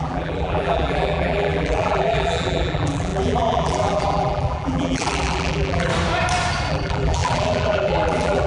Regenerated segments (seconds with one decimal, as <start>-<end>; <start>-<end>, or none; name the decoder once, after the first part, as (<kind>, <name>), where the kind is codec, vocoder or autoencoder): 0.0-5.9 (vocoder, BigVGAN v2); 6.7-8.5